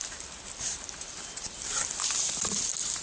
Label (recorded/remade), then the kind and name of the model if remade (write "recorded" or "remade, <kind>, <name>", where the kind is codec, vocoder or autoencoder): remade, vocoder, BigVGAN v2